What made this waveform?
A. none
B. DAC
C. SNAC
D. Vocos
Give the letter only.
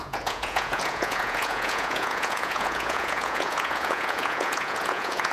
D